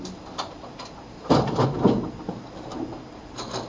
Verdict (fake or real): real